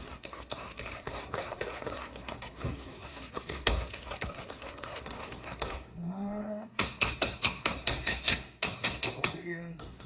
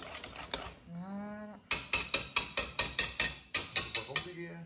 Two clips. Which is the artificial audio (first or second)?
first